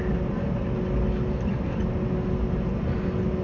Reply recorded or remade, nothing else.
recorded